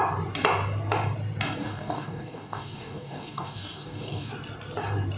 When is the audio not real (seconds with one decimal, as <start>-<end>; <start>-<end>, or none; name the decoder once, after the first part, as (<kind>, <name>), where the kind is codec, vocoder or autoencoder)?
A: 1.6-4.3 (codec, DAC)